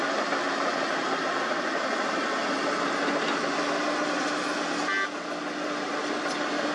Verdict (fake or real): real